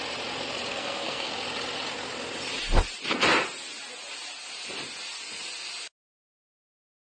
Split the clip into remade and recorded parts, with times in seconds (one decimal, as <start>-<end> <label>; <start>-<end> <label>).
0.0-0.7 recorded; 0.7-1.3 remade; 1.3-7.1 recorded